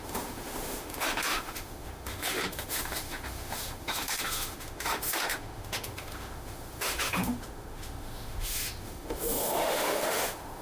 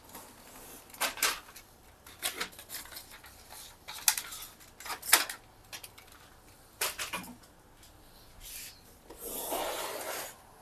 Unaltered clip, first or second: second